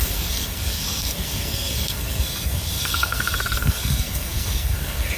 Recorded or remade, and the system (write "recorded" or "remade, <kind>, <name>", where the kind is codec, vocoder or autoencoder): remade, codec, SNAC